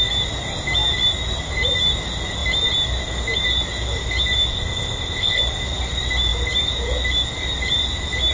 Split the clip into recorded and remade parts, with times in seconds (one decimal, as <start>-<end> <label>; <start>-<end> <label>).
0.0-4.5 recorded; 4.5-5.4 remade; 5.4-8.3 recorded